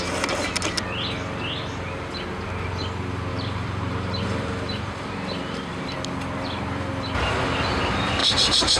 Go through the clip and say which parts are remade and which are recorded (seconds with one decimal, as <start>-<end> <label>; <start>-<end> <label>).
0.0-3.3 recorded; 3.3-5.9 remade; 5.9-8.2 recorded; 8.2-8.8 remade